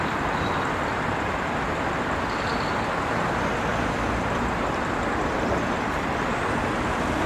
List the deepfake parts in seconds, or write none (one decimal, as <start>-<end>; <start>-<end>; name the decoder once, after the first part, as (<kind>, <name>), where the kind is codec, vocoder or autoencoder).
0.9-2.9 (vocoder, BigVGAN v2); 3.7-6.6